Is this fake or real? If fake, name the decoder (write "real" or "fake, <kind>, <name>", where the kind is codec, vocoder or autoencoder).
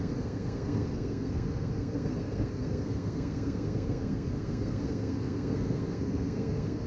fake, codec, SNAC